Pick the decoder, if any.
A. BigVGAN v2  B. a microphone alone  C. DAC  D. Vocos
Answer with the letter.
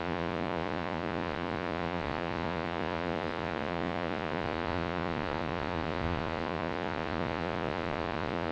D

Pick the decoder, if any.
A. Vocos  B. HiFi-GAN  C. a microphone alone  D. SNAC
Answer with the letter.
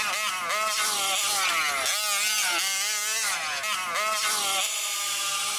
C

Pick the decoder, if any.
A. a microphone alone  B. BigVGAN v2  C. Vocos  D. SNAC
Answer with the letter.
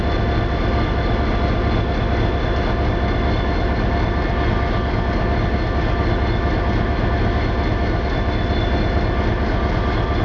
A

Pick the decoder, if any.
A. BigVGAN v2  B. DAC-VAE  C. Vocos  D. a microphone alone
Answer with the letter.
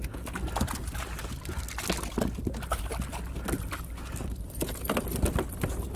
D